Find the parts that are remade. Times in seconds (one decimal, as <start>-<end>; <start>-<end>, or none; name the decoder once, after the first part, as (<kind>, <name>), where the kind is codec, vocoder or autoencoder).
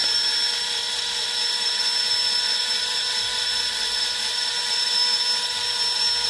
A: none